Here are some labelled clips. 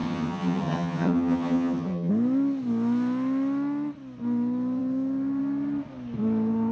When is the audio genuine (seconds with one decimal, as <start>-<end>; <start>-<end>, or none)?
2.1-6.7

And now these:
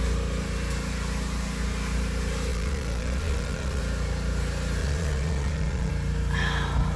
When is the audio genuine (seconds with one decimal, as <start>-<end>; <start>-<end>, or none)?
0.0-2.5; 3.8-4.8; 5.9-7.0

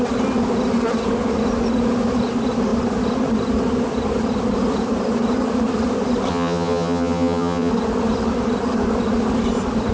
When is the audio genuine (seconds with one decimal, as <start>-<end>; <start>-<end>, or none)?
0.0-6.3; 7.7-9.9